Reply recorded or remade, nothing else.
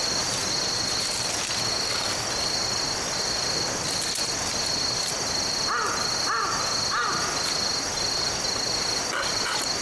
recorded